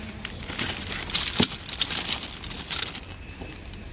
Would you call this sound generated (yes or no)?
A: no